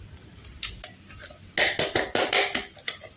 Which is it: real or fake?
real